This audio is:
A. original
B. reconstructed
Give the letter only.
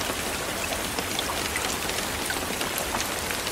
A